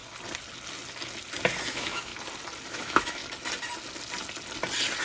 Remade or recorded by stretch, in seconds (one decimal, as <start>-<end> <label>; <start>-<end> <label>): 0.0-1.7 recorded; 1.7-2.1 remade; 2.1-2.7 recorded; 2.7-3.2 remade; 3.2-5.0 recorded